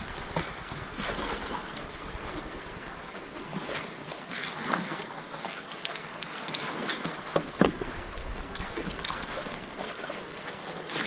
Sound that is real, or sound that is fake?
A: fake